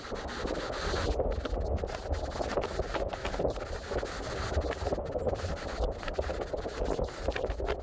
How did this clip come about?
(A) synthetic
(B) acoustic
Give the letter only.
B